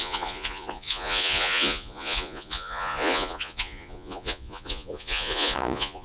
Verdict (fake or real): fake